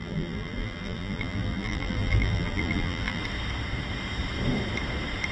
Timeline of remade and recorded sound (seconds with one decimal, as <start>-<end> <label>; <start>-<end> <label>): 0.0-3.2 remade; 3.2-5.3 recorded